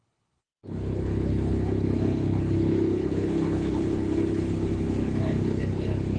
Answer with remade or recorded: remade